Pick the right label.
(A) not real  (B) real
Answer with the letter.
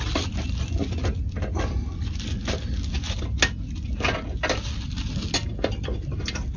B